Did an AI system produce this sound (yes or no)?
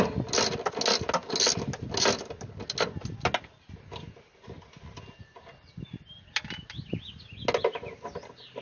no